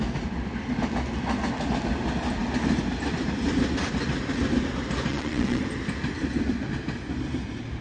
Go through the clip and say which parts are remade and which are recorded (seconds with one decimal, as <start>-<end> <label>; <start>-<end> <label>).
0.0-5.1 recorded; 5.1-5.6 remade; 5.6-7.8 recorded